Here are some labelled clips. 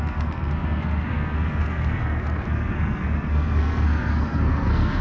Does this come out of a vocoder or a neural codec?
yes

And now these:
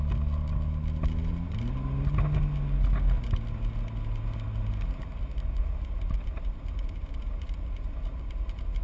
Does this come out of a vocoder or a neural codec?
no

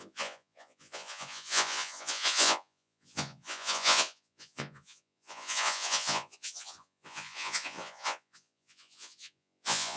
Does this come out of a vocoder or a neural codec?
yes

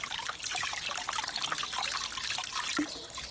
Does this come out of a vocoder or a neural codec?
no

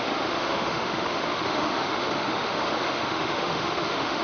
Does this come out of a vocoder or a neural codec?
yes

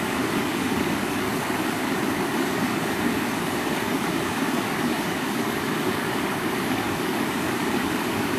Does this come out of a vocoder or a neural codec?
yes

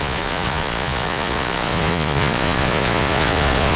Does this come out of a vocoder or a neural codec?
yes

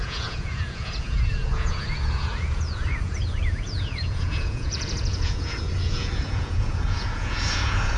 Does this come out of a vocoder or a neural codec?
yes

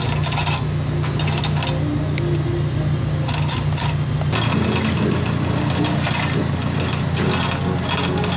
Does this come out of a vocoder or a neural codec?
no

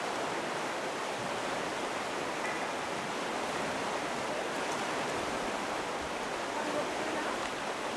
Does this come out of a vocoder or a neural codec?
no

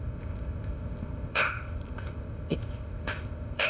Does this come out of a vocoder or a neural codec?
yes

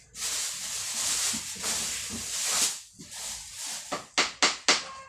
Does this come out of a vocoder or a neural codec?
no